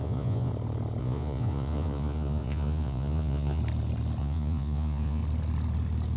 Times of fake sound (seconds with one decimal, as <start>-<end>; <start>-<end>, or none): 0.0-0.5; 1.0-3.6; 4.2-5.2